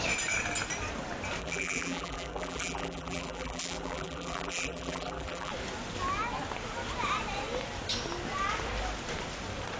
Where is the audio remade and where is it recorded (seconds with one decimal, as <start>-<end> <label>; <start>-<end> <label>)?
0.0-1.4 recorded; 1.4-5.5 remade; 5.5-9.8 recorded